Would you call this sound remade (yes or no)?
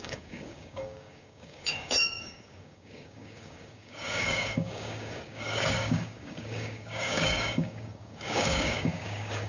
yes